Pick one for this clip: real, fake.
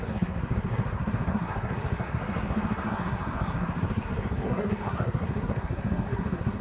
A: fake